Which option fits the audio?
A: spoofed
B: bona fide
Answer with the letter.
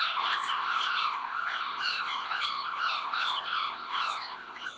A